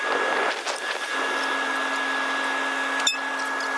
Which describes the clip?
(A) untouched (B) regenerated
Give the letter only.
A